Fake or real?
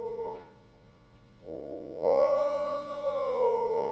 fake